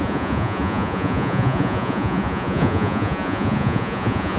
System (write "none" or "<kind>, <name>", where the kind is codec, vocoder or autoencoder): vocoder, Vocos